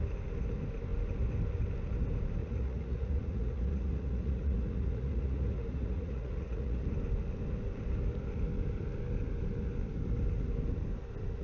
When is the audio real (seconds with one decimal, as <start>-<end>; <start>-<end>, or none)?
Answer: 0.0-2.4; 6.8-11.4